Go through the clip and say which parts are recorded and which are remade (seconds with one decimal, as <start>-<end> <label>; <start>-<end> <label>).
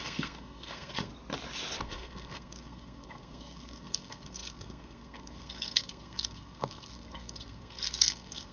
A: 0.0-1.1 remade; 1.1-1.8 recorded; 1.8-8.5 remade